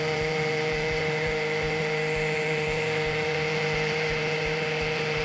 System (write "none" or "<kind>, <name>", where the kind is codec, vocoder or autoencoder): vocoder, BigVGAN v2